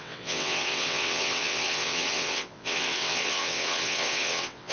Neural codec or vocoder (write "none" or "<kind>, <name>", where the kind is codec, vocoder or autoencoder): vocoder, WaveNeXt